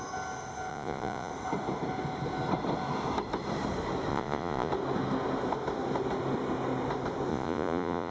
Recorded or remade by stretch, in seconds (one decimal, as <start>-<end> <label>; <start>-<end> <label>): 0.0-0.7 recorded; 0.7-1.3 remade; 1.3-4.1 recorded; 4.1-4.7 remade; 4.7-7.3 recorded; 7.3-8.1 remade